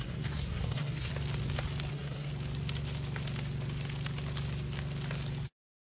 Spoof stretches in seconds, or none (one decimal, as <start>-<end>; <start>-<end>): 0.0-1.1; 1.9-2.3